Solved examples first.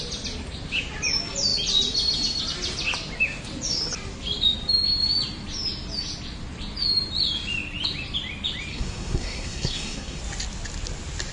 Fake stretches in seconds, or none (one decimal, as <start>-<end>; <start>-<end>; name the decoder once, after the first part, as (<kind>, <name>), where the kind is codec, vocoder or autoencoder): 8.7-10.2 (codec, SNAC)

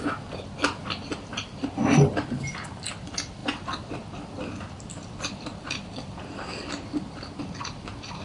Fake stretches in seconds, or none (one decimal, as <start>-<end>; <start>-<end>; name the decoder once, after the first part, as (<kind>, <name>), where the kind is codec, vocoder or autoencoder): none

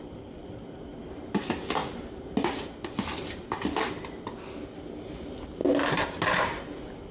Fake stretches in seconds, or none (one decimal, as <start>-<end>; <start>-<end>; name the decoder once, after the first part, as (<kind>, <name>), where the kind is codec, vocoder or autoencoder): none